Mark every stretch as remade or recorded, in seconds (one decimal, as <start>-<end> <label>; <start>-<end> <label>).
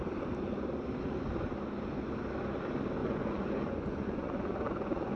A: 0.0-3.0 recorded; 3.0-5.2 remade